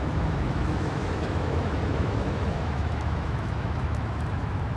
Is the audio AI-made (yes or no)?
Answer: yes